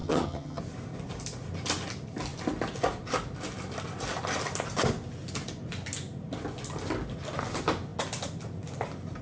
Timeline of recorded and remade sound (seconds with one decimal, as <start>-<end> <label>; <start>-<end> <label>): 0.0-0.6 remade; 0.6-9.2 recorded